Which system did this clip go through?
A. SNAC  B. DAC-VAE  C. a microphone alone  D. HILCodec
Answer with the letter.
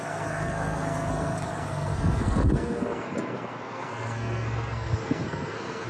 A